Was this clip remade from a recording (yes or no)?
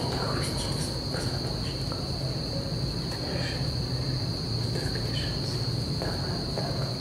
no